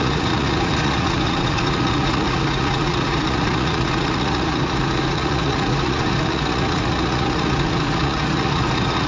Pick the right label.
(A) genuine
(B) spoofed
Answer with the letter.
B